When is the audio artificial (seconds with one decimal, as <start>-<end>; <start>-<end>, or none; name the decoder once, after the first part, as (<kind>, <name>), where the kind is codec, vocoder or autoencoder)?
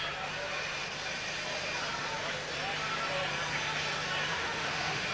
4.3-5.1 (autoencoder, DAC-VAE)